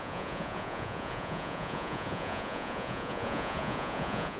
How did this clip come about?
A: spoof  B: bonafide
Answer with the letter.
A